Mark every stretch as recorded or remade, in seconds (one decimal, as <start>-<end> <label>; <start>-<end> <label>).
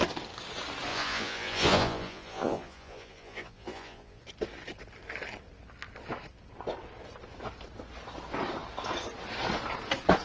0.0-0.9 recorded; 0.9-4.2 remade; 4.2-10.2 recorded